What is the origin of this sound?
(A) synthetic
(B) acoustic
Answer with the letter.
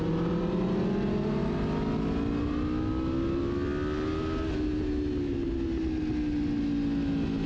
B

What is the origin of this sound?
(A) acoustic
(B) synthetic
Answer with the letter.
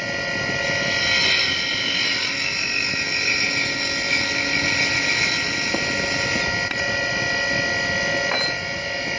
A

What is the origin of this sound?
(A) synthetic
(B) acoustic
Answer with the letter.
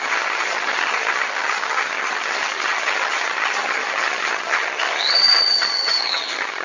A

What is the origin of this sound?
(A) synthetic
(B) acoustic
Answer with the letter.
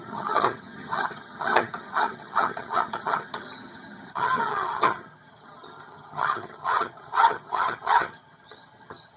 A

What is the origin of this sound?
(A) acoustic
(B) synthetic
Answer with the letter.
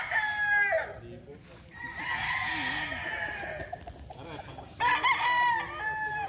A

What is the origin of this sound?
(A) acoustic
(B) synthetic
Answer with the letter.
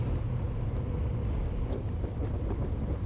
A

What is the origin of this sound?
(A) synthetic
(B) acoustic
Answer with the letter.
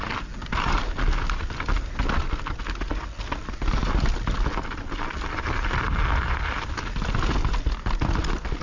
B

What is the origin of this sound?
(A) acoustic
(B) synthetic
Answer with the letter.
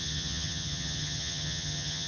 B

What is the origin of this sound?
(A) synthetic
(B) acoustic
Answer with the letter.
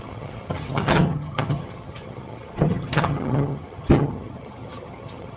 A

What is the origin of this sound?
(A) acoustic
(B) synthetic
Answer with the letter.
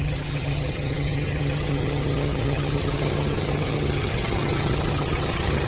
B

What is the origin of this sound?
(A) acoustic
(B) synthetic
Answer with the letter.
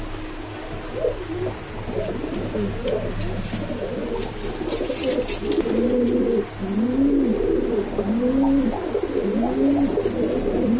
A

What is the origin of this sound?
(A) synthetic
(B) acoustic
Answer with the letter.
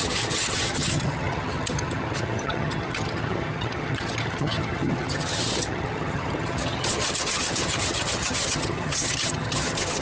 A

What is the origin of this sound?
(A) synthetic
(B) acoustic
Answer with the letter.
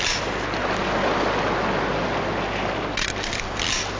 B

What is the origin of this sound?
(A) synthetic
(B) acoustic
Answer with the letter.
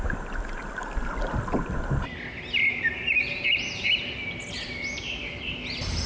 B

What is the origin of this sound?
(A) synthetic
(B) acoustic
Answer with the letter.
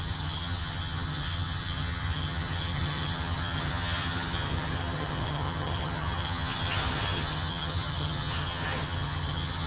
A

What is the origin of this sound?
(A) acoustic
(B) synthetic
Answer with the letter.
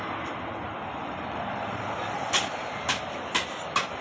A